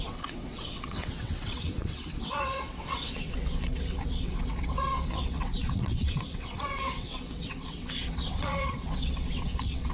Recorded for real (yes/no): no